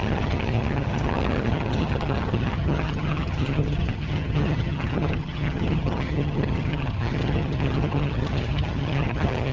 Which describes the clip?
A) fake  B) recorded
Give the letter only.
A